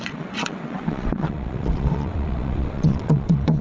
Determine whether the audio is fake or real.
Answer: fake